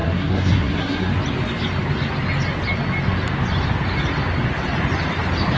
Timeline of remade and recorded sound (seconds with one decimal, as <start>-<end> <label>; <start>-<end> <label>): 0.0-1.1 remade; 1.1-5.6 recorded

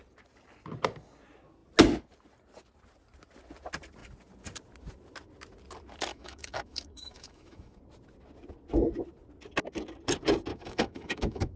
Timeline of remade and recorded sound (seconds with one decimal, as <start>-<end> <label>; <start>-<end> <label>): 0.0-6.1 recorded; 6.1-7.8 remade; 7.8-10.5 recorded; 10.5-11.6 remade

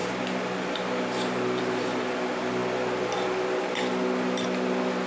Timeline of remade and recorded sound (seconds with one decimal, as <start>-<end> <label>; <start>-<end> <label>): 0.0-5.1 recorded

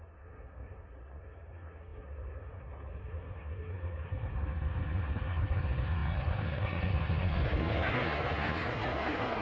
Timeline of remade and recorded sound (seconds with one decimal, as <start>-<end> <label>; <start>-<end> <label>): 0.0-9.4 remade

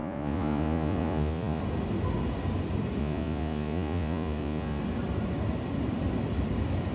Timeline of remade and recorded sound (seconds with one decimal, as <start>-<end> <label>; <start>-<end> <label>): 0.0-1.6 remade; 1.6-3.0 recorded; 3.0-4.8 remade; 4.8-6.9 recorded

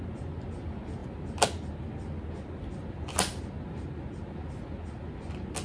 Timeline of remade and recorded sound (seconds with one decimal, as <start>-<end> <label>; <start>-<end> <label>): 0.0-5.6 recorded

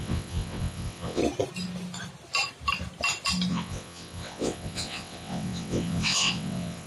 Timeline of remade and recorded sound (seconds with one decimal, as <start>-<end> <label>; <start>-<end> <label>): 0.0-1.2 remade; 1.2-3.5 recorded; 3.5-6.9 remade

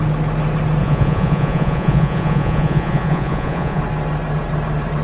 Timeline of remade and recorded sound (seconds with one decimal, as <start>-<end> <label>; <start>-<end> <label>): 0.0-0.8 recorded; 0.8-3.8 remade; 3.8-5.0 recorded